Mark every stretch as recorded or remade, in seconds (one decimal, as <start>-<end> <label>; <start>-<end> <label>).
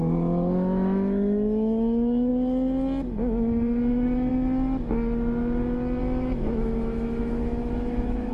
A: 0.0-2.3 remade; 2.3-3.2 recorded; 3.2-4.3 remade; 4.3-6.0 recorded; 6.0-8.3 remade